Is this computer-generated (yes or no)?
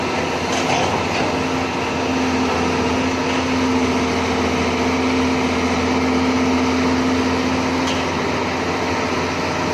no